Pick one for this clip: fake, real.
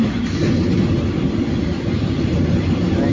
real